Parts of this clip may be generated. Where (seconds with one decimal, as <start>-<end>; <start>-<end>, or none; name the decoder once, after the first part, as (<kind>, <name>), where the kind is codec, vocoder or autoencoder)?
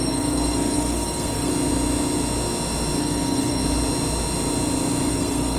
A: 0.0-1.5 (codec, SNAC); 3.0-3.6; 5.1-5.6